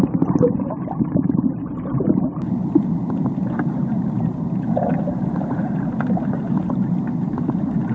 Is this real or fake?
fake